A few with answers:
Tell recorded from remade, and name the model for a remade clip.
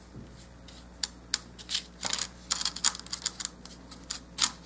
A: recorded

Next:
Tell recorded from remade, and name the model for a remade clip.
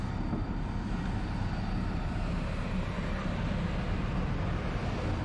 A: recorded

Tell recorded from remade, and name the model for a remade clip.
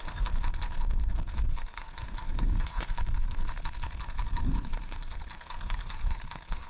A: remade, codec, SNAC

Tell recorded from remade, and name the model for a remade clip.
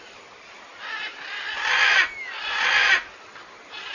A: recorded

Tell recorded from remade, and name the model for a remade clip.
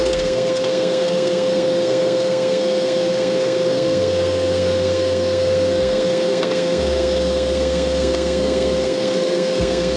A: remade, codec, SNAC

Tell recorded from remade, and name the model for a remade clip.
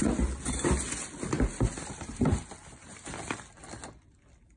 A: recorded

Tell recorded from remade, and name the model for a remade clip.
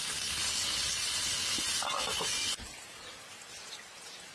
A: recorded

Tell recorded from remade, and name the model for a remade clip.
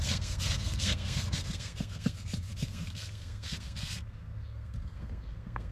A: remade, codec, SNAC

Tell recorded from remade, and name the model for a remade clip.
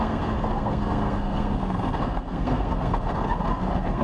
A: remade, codec, SNAC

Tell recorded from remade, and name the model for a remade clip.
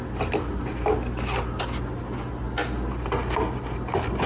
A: recorded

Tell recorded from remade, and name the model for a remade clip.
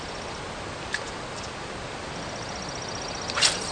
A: recorded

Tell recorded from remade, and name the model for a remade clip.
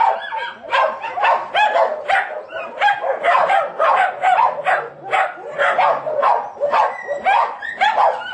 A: recorded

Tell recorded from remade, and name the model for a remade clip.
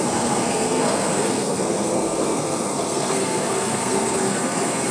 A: remade, codec, SNAC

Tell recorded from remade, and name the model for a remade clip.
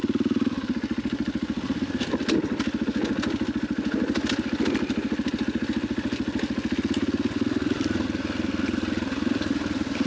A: recorded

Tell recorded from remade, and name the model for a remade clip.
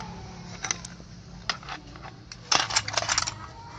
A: recorded